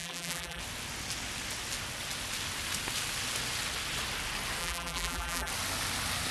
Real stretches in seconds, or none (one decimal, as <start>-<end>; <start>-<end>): 0.6-4.6; 5.5-6.3